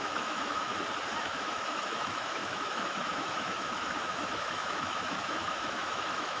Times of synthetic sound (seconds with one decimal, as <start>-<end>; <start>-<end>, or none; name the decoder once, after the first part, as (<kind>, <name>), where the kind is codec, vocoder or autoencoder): 0.0-0.7 (autoencoder, DAC-VAE); 1.2-6.4